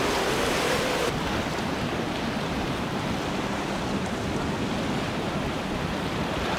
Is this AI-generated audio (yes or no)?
no